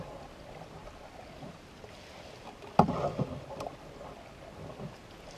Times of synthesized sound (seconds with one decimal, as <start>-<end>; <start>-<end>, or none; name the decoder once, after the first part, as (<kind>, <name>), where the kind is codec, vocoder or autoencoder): none